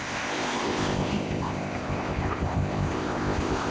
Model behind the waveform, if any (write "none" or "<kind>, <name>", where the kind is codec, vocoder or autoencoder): codec, ZipCodec